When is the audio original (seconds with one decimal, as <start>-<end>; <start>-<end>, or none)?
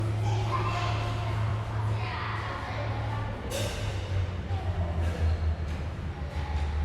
0.0-6.8